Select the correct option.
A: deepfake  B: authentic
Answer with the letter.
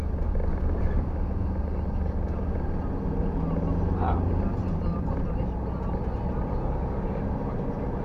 B